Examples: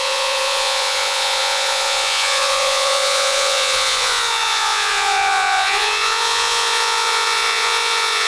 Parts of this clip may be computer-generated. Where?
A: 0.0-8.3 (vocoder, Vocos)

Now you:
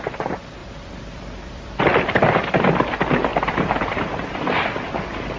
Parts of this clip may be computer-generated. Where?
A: 0.6-2.3 (vocoder, BigVGAN v2); 3.3-4.0

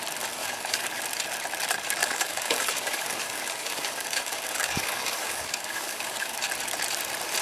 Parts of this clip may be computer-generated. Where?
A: 0.4-1.0 (codec, DAC); 2.0-6.4

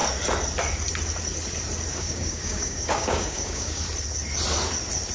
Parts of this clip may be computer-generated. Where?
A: 1.9-3.8 (codec, DAC)

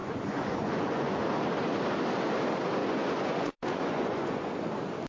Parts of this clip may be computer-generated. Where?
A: 0.0-1.2 (vocoder, Vocos); 2.8-4.5

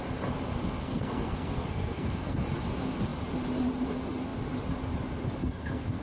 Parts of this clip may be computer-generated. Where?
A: 0.8-2.4 (codec, SNAC); 5.4-6.0

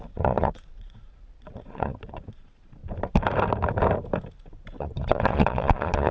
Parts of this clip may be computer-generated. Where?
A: 0.0-2.8 (vocoder, Vocos); 4.8-6.1